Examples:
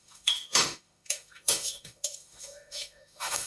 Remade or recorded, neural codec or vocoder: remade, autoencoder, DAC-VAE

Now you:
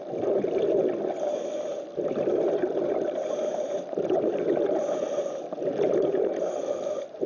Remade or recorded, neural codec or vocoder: recorded